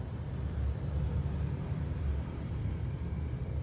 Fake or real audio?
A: fake